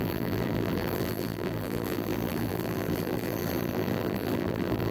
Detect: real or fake fake